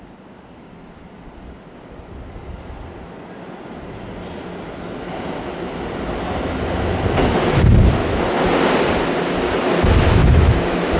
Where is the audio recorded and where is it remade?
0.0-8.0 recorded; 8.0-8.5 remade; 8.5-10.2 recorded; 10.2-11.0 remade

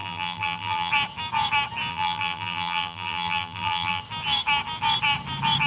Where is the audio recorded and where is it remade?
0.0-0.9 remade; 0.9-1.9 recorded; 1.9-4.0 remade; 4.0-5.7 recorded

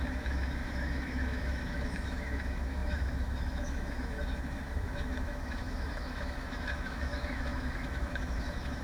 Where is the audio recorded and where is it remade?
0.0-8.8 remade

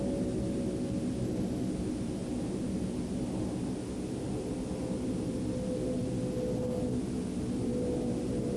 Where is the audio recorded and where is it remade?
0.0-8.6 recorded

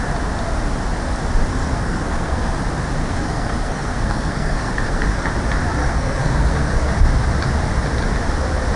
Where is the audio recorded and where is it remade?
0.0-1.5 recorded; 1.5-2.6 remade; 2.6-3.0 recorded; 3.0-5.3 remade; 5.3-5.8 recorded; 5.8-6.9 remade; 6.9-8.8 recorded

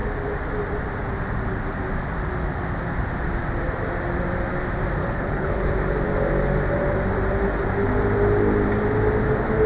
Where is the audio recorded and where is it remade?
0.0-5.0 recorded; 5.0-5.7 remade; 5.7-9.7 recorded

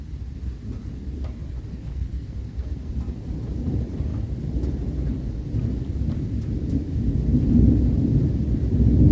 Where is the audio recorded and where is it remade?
0.0-1.7 recorded; 1.7-2.9 remade; 2.9-9.1 recorded